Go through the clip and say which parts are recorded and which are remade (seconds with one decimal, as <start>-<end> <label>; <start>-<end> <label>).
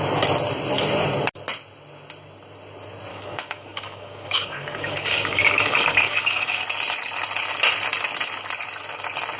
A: 0.0-3.1 recorded; 3.1-6.6 remade; 6.6-9.4 recorded